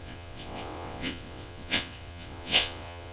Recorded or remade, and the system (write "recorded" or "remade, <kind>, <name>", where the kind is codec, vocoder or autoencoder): remade, vocoder, WaveNeXt